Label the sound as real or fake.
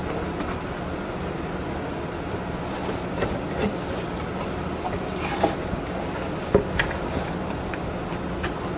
real